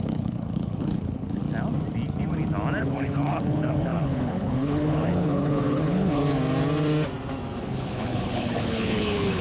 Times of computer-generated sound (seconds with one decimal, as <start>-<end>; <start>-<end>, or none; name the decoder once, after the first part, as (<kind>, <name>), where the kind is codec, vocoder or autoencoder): 0.0-1.4 (codec, HILCodec); 2.8-6.2; 7.6-9.4